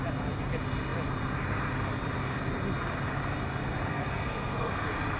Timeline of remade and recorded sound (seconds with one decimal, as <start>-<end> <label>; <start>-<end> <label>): 0.0-3.9 recorded; 3.9-4.7 remade; 4.7-5.2 recorded